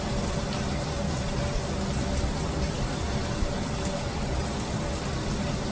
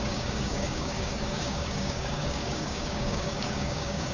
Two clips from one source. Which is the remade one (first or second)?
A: second